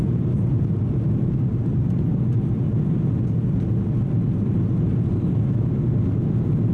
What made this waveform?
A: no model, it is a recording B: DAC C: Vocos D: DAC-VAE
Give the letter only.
A